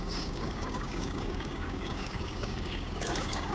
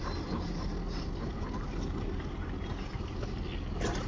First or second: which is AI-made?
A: first